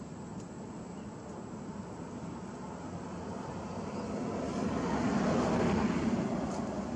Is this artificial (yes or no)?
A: no